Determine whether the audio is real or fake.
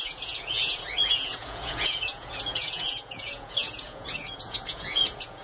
fake